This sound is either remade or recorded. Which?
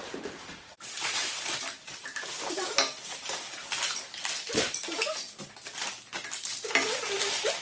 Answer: remade